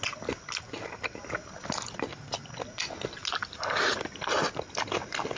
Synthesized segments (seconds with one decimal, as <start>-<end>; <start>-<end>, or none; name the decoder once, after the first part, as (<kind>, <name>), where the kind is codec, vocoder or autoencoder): none